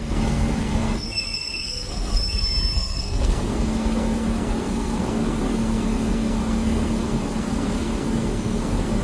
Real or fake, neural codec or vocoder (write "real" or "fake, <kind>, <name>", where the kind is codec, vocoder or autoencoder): fake, codec, SNAC